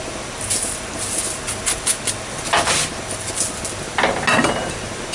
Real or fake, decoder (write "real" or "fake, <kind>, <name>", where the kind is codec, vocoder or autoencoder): real